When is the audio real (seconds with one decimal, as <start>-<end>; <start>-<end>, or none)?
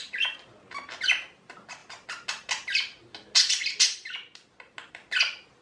0.0-5.6